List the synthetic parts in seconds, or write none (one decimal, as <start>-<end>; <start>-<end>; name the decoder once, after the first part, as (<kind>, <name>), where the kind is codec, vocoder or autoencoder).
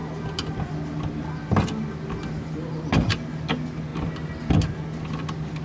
none